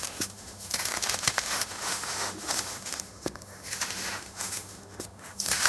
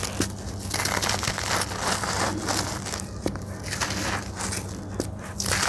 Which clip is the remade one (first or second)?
first